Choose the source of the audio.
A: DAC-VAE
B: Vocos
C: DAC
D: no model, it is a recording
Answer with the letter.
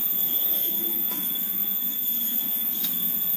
A